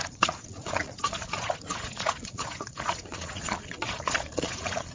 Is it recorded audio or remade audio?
remade